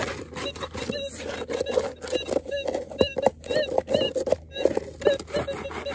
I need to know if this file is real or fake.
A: real